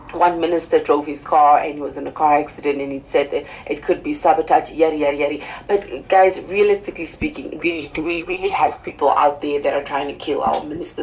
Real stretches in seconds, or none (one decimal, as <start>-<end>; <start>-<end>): 0.0-7.6; 8.9-11.0